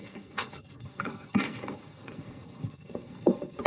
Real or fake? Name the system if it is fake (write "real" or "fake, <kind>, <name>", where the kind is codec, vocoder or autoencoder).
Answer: fake, codec, SNAC